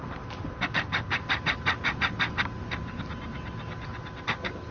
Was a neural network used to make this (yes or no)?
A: no